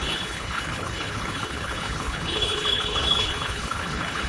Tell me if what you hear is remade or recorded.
remade